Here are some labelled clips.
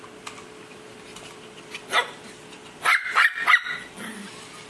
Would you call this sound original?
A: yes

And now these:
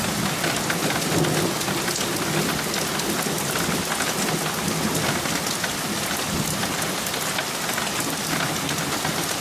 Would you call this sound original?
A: yes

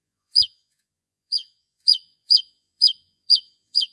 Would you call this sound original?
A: no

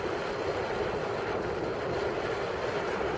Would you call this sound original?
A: yes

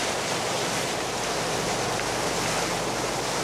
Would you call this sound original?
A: yes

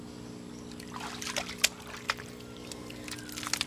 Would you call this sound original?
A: yes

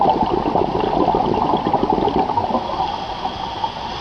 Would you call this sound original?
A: yes